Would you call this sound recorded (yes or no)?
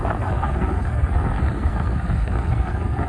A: no